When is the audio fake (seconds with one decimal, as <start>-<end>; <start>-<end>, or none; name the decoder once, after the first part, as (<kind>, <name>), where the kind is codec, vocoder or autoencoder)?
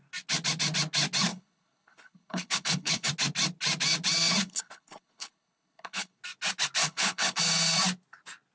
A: 1.3-3.1 (codec, HILCodec); 4.4-6.2; 6.8-7.4